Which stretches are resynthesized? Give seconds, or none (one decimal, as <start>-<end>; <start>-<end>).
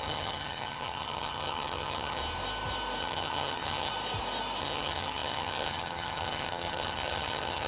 0.0-2.2; 3.0-3.9; 4.6-7.7